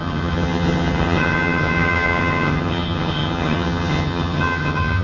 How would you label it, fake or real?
fake